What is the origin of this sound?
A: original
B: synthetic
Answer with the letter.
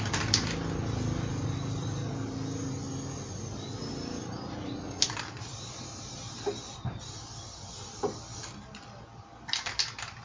A